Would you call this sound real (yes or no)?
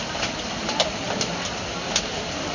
no